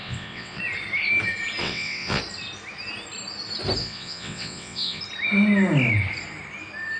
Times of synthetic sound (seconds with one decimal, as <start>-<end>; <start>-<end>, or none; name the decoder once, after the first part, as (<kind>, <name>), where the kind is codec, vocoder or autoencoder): 0.0-0.6 (vocoder, WaveNeXt); 1.6-2.2; 3.8-5.0